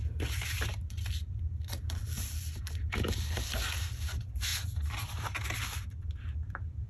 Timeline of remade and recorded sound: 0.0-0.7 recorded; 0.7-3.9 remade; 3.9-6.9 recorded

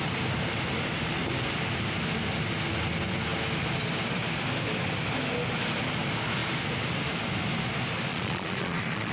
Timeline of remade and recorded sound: 0.0-8.1 recorded; 8.1-9.1 remade

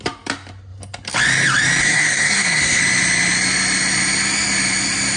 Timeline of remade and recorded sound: 0.0-1.8 recorded; 1.8-2.8 remade; 2.8-5.2 recorded

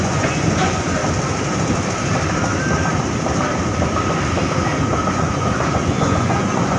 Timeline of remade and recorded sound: 0.0-1.0 remade; 1.0-5.1 recorded; 5.1-6.8 remade

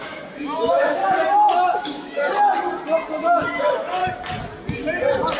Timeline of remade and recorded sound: 0.0-1.0 remade; 1.0-1.8 recorded; 1.8-2.3 remade; 2.3-3.2 recorded; 3.2-4.0 remade; 4.0-5.4 recorded

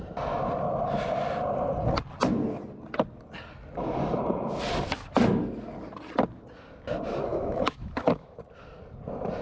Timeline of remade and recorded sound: 0.0-7.3 recorded; 7.3-8.4 remade; 8.4-9.4 recorded

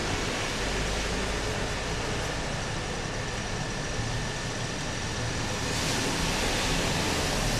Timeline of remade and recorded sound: 0.0-7.6 recorded